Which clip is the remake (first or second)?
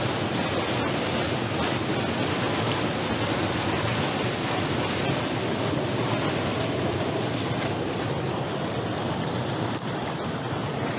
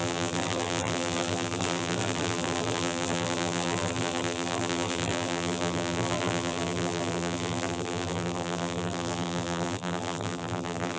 second